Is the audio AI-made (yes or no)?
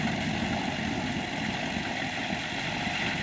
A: no